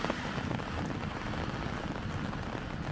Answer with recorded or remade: recorded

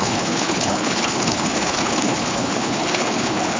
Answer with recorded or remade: remade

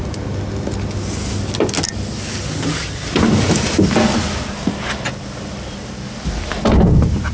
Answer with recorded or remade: recorded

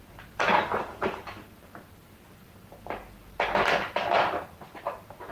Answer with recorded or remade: remade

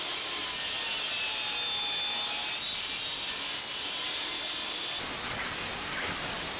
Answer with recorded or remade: recorded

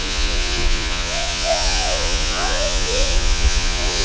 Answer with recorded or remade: remade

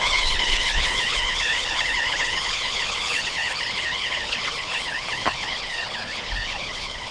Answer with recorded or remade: remade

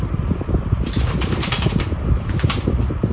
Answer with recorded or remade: recorded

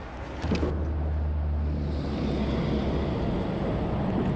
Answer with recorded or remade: recorded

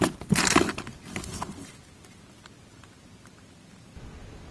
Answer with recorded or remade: recorded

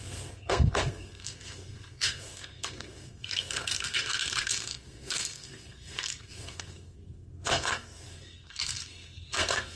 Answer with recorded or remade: remade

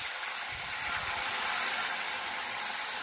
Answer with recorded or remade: recorded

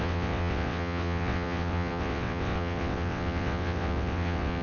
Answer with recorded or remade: remade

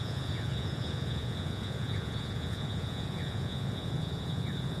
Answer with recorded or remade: remade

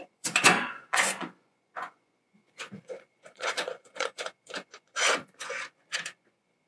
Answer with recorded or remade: remade